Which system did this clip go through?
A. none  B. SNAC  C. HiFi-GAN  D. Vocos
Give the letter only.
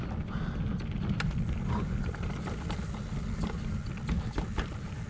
A